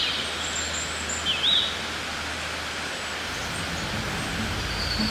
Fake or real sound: real